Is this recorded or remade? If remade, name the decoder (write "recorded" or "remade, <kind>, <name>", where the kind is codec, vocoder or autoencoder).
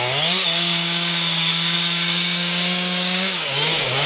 remade, codec, DAC